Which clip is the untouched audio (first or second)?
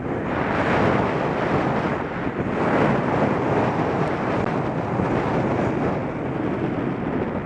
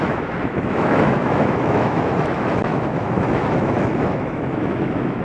first